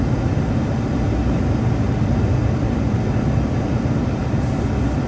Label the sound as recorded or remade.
recorded